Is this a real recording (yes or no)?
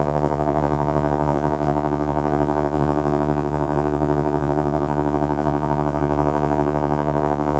no